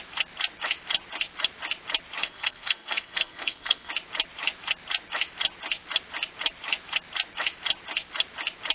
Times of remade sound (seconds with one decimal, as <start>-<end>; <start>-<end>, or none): 2.2-3.9